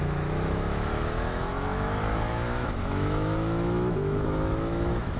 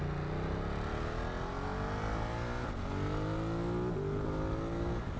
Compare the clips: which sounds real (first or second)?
second